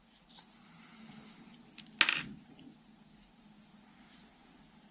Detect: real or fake real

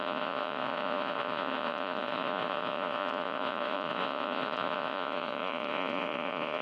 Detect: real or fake fake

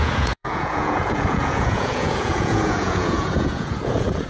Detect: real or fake fake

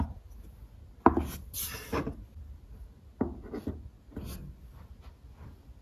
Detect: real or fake real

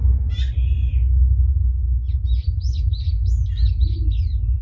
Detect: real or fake real